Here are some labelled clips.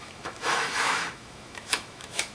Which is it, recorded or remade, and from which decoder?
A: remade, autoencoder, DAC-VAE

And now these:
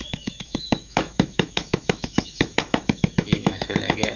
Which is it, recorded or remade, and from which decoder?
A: remade, autoencoder, DAC-VAE